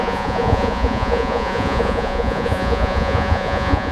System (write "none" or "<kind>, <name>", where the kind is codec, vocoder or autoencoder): vocoder, Vocos